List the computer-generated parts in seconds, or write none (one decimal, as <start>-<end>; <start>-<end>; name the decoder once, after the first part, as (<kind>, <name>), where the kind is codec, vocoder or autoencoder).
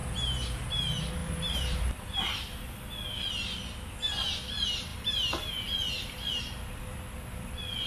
1.2-2.2 (vocoder, BigVGAN v2); 4.9-5.5